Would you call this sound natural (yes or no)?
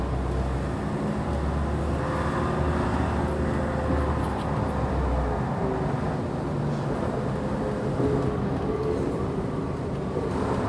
yes